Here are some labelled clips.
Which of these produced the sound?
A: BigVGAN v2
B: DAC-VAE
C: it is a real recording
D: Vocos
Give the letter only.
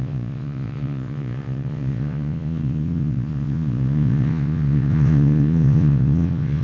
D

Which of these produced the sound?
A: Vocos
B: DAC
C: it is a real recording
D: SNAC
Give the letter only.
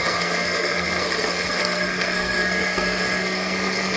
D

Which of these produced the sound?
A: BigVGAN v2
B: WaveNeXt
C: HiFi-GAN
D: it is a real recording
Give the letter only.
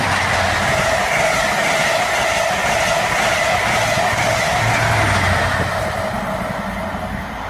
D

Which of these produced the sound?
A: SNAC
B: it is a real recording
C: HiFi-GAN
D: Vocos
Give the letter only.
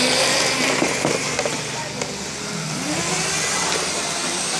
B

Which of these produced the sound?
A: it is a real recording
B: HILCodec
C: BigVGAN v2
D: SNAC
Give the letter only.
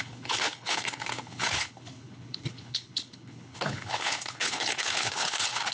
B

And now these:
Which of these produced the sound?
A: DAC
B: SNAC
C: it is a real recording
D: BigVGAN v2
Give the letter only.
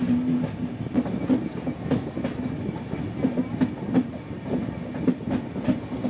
C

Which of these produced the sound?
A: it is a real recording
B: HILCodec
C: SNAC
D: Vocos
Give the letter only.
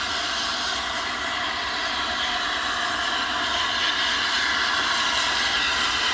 A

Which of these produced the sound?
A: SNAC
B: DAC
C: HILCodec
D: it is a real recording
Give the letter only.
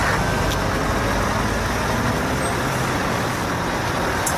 D